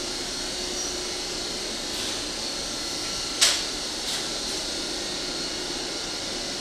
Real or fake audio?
real